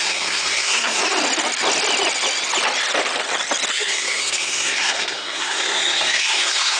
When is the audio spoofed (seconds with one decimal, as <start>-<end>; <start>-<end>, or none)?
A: 0.0-1.0; 3.7-6.8